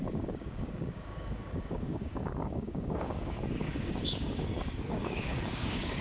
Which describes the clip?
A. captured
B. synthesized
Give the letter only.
B